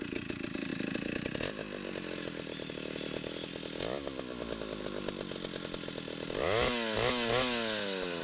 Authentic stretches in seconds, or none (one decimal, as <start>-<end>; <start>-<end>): 0.0-8.2